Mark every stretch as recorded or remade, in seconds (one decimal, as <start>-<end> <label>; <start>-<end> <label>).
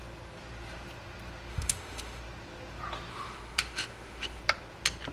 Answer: 0.0-1.5 recorded; 1.5-2.2 remade; 2.2-3.1 recorded; 3.1-4.4 remade; 4.4-5.1 recorded